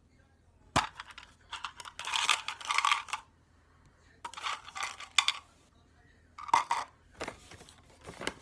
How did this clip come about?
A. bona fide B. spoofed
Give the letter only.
A